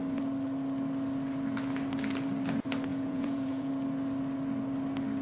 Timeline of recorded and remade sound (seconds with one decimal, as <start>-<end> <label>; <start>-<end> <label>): 0.0-2.9 recorded; 2.9-3.7 remade; 3.7-5.2 recorded